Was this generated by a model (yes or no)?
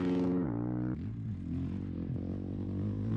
no